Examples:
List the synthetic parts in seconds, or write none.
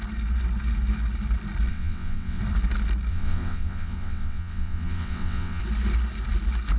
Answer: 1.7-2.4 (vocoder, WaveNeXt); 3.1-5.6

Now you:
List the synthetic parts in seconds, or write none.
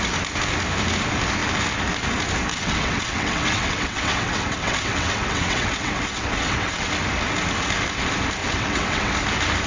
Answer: 2.5-6.9 (vocoder, WaveNeXt); 8.4-9.1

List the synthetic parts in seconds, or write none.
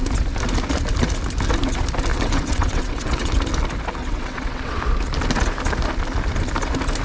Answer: 2.1-3.3 (vocoder, WaveNeXt); 4.0-4.8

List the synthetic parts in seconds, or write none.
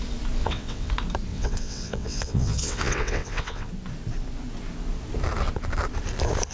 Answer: 0.4-0.9 (vocoder, WaveNeXt); 1.3-3.7